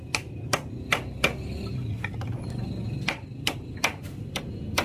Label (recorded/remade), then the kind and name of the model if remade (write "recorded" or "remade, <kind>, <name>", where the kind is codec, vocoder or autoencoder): recorded